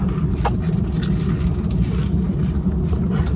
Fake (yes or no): no